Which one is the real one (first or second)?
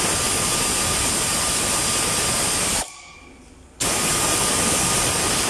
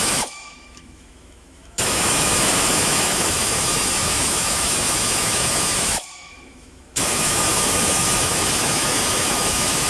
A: first